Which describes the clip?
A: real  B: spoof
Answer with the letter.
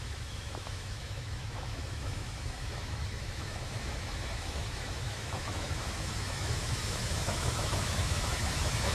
B